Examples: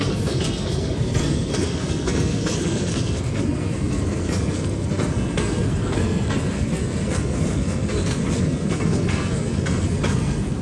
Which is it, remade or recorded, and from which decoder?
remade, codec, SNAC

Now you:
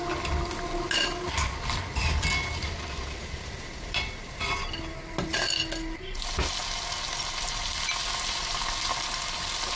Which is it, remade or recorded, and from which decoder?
recorded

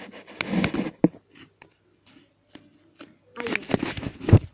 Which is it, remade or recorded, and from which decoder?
recorded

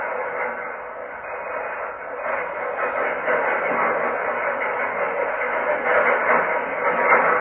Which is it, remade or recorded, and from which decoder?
recorded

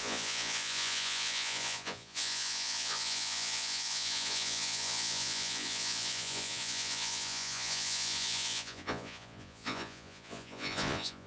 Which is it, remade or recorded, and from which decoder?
remade, vocoder, Vocos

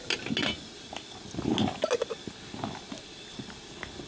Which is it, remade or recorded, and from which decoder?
recorded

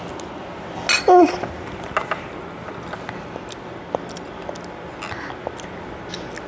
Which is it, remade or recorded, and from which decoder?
recorded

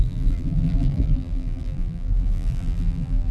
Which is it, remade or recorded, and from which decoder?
remade, vocoder, BigVGAN v2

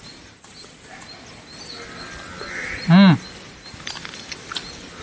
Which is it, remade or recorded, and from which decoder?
recorded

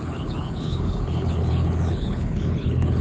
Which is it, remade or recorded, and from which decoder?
remade, codec, HILCodec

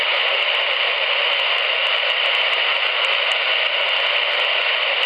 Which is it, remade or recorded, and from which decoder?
recorded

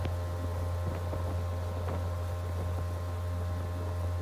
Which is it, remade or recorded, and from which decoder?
recorded